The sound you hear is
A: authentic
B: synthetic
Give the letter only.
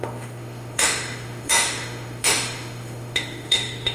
B